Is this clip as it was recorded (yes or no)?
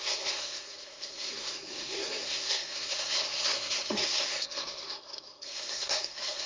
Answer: no